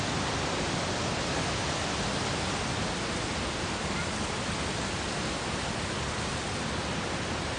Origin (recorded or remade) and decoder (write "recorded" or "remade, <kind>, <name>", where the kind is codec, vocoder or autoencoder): recorded